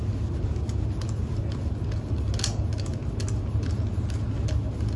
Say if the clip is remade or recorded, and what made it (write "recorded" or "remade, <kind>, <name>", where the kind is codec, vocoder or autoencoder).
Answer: recorded